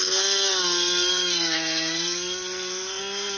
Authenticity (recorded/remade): remade